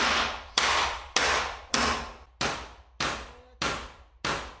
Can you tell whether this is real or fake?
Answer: real